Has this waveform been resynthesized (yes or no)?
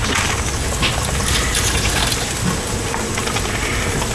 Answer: no